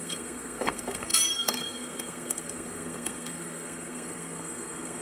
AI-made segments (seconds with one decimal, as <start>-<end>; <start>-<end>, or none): 0.0-5.0